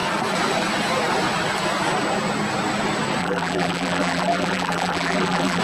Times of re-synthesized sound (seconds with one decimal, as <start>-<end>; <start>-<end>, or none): 3.2-5.6